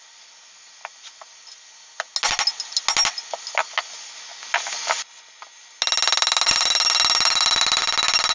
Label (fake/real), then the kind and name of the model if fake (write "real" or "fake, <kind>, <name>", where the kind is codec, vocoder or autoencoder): real